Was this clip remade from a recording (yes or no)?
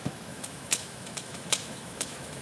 yes